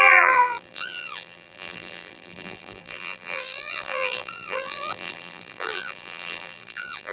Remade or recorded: remade